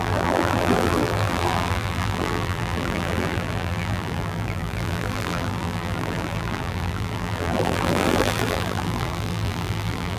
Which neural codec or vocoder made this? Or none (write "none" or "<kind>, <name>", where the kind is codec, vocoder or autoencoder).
vocoder, BigVGAN v2